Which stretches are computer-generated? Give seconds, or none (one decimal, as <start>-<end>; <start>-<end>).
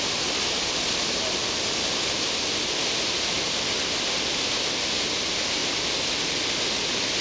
none